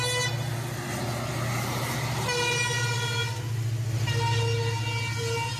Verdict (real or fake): real